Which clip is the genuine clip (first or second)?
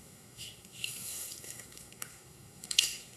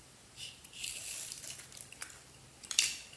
second